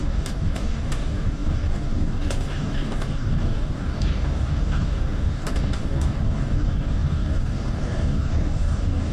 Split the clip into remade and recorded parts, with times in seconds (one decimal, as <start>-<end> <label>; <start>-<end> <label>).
0.0-9.1 remade